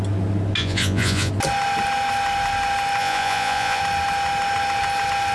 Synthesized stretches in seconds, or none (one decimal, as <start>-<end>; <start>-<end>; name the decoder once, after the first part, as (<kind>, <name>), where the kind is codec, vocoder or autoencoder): 0.6-1.3 (vocoder, Vocos); 3.0-3.8

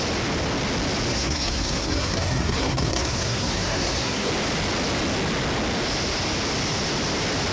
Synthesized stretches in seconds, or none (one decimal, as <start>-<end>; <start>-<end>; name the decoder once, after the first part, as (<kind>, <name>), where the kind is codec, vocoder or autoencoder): 1.1-4.3 (codec, SNAC)

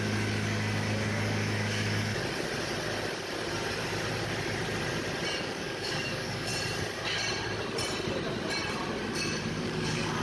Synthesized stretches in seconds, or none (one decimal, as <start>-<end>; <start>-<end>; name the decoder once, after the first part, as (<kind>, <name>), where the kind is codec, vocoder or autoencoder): 0.0-2.2 (codec, DAC); 5.4-6.5; 9.5-10.2

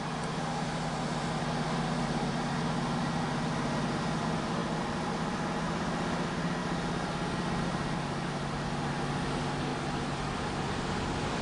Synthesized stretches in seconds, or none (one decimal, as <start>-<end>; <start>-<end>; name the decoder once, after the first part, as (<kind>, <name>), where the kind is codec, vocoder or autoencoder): 9.7-11.4 (vocoder, BigVGAN v2)

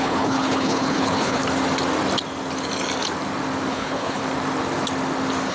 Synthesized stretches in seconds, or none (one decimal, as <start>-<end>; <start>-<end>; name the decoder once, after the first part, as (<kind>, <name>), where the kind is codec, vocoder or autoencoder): 0.0-1.4 (codec, HILCodec); 3.7-4.2

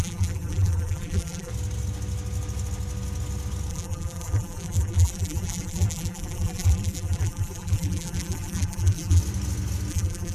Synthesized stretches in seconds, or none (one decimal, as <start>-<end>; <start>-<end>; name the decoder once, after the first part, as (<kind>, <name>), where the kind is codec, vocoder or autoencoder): 0.0-1.5 (vocoder, BigVGAN v2); 3.7-9.2; 9.9-10.3